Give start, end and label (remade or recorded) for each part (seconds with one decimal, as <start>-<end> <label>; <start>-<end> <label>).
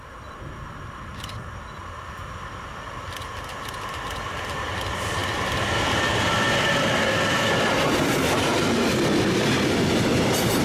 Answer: 0.0-10.6 recorded